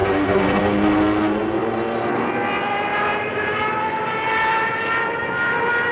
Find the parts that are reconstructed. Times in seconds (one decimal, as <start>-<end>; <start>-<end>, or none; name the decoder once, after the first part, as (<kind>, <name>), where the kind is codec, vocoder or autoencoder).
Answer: 0.0-0.6 (vocoder, BigVGAN v2); 2.9-3.6